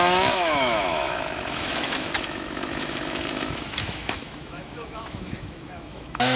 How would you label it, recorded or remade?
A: remade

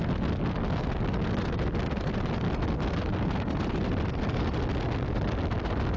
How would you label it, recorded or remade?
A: recorded